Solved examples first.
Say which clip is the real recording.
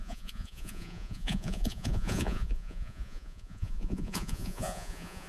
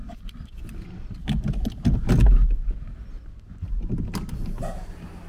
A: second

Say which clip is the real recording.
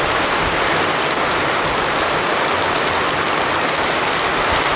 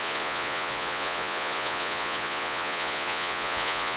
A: first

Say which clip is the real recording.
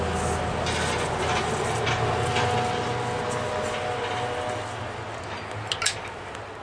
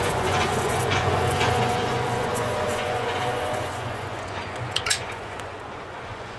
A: first